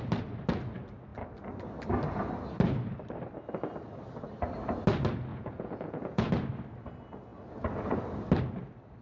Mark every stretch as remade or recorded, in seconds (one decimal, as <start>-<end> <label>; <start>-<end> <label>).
0.0-5.3 recorded; 5.3-6.3 remade; 6.3-9.0 recorded